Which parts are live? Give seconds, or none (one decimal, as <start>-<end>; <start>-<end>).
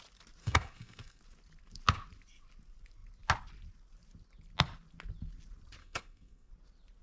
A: 0.0-0.4; 1.2-5.8; 6.5-7.0